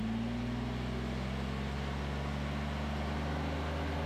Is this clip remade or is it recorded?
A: recorded